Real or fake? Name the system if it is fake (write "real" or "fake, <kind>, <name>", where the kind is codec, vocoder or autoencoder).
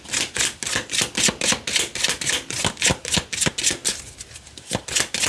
real